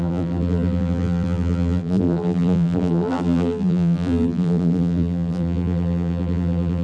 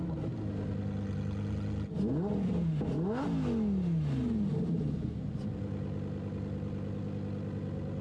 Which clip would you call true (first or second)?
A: second